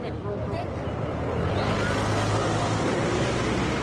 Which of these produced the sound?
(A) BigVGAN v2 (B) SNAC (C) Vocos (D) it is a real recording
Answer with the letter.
D